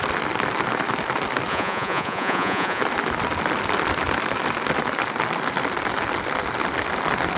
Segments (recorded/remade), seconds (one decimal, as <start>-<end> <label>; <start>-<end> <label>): 0.0-1.5 recorded; 1.5-2.8 remade; 2.8-7.4 recorded